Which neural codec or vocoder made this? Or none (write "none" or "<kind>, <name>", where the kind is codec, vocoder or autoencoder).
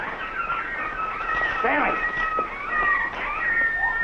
none